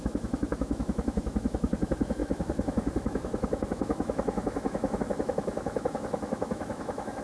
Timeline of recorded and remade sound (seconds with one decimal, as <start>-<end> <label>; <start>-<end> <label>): 0.0-7.2 remade